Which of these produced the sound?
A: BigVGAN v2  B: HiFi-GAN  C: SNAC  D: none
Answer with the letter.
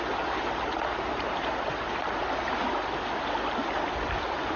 D